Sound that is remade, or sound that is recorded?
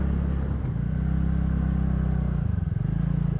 recorded